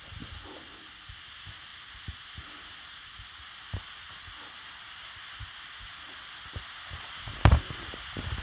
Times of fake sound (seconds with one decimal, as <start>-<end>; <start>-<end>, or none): none

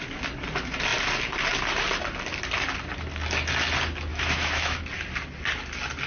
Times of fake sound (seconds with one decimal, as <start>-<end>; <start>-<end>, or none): 4.1-4.8

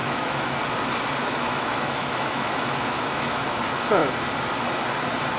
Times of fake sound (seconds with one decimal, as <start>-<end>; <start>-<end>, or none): 0.0-0.5; 1.2-3.6

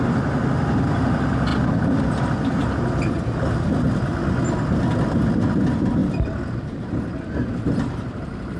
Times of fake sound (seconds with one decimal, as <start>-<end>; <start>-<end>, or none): none

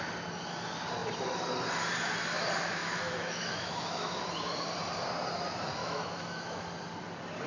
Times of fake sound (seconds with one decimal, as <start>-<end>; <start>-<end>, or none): 2.8-4.2; 5.8-6.7

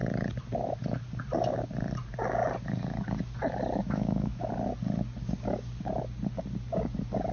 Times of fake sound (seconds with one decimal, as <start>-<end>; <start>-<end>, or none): 3.8-4.5

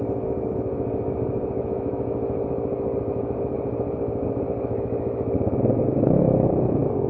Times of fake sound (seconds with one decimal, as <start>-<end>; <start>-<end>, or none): 0.0-7.1

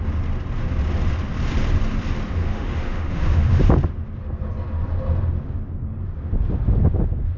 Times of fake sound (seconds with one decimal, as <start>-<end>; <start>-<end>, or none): 2.4-3.6